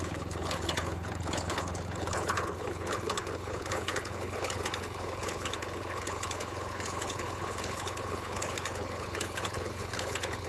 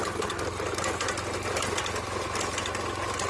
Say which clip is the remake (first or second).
first